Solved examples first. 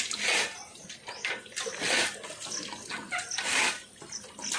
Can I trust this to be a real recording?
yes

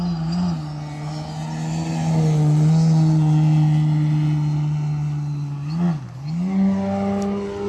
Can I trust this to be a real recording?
yes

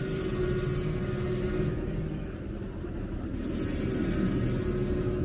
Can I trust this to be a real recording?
yes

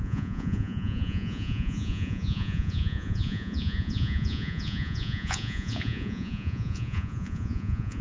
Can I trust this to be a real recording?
no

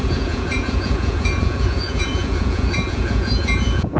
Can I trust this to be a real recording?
no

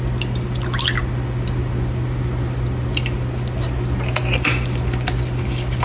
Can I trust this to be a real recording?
yes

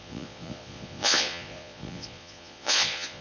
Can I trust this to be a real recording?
no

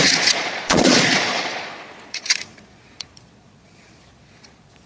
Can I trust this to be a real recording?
no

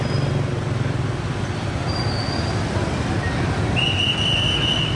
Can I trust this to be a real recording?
yes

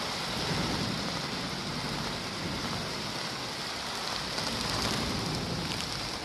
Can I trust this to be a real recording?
yes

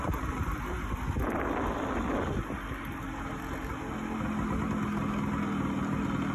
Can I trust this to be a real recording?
yes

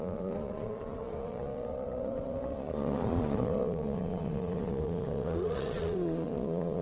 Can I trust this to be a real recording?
no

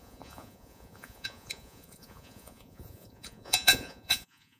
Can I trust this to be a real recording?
no